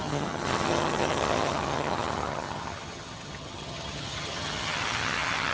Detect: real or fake fake